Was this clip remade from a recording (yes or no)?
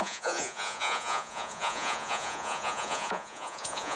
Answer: yes